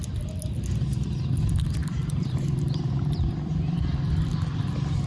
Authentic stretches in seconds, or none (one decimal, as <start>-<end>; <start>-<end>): 0.0-1.8; 3.8-5.1